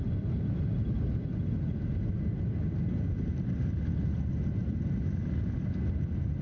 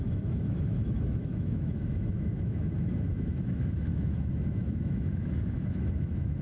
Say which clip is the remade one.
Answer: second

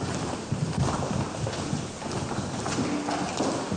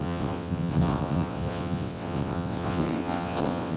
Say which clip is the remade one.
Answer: second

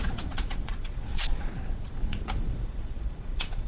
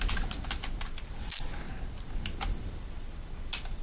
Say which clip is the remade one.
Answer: first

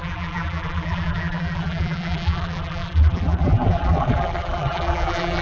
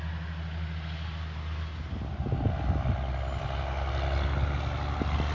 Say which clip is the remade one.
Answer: first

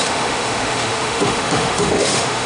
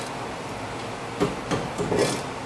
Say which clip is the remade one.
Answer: first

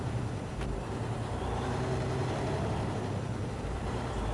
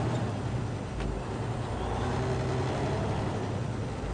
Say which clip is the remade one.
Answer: first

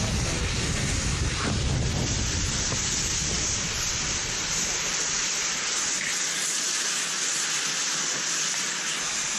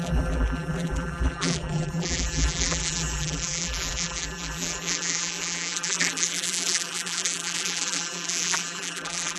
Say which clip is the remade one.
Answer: second